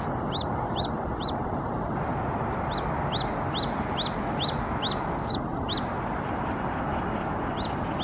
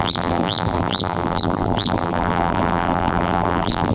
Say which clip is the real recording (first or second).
first